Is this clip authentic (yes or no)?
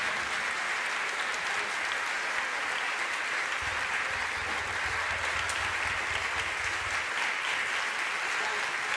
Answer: yes